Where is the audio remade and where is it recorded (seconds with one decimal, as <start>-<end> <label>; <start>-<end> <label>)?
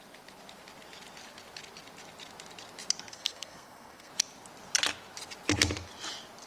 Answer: 0.0-3.1 recorded; 3.1-4.1 remade; 4.1-6.5 recorded